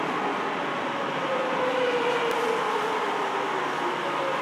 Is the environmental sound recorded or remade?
remade